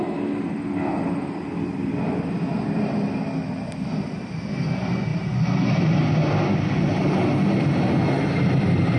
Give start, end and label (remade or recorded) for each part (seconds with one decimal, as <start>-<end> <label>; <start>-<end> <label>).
0.0-9.0 recorded